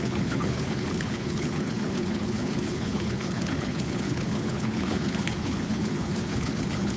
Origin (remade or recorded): remade